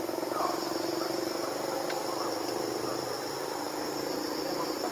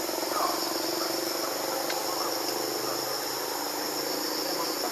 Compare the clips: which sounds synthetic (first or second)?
first